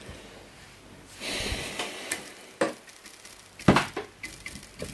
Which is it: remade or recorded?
recorded